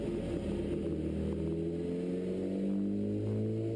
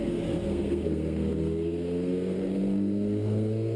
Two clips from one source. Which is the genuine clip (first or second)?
first